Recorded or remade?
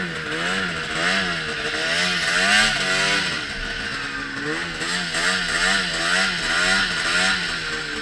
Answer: recorded